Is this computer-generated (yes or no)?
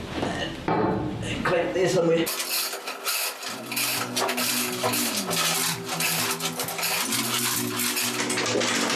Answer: no